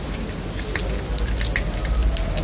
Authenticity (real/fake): real